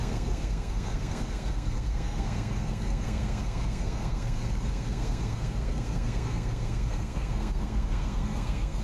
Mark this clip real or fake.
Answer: fake